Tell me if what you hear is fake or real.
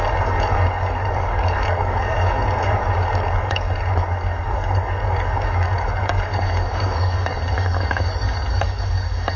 fake